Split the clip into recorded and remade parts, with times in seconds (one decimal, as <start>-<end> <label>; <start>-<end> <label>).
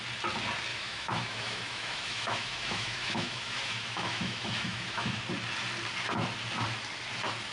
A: 0.0-0.7 recorded; 0.7-5.2 remade; 5.2-7.5 recorded